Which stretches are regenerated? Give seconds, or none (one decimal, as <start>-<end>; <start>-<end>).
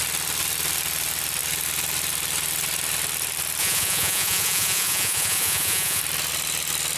3.6-6.0